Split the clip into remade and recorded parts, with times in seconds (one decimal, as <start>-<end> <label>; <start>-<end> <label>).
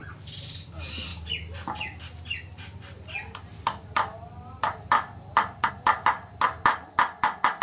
0.0-7.6 recorded